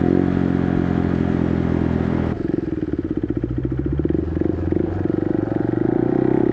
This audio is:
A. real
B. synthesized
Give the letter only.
A